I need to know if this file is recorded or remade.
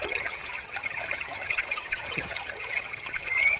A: remade